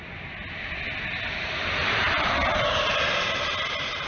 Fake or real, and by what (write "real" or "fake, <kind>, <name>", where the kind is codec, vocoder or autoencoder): real